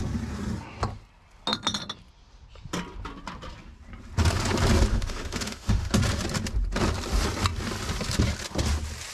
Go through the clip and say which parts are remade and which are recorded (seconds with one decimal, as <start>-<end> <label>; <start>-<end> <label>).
0.0-4.9 recorded; 4.9-5.9 remade; 5.9-9.1 recorded